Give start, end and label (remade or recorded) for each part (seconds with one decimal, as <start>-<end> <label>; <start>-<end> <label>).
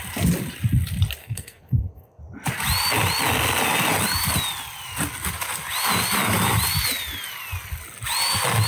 0.0-1.2 recorded; 1.2-2.2 remade; 2.2-8.7 recorded